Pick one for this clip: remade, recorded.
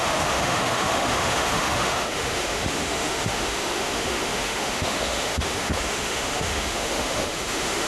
remade